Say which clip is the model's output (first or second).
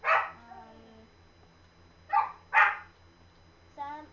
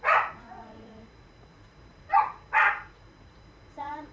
second